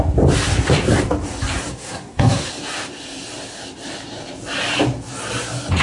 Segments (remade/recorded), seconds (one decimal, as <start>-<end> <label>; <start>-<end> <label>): 0.0-1.7 recorded; 1.7-2.5 remade; 2.5-5.8 recorded